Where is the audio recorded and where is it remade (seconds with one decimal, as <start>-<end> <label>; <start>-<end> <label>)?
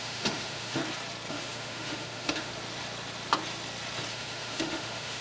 0.0-0.8 remade; 0.8-1.3 recorded; 1.3-2.5 remade; 2.5-4.1 recorded; 4.1-5.2 remade